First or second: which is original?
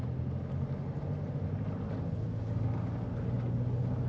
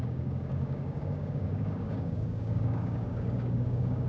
first